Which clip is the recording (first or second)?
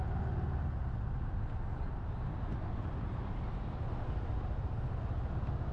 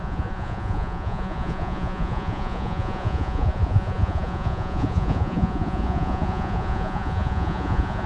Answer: first